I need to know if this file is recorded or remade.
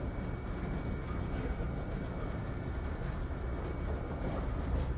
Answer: remade